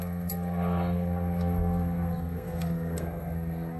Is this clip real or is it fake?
fake